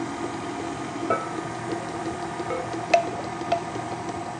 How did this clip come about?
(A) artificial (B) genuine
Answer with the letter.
B